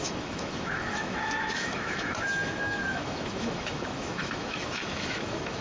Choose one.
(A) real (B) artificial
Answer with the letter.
B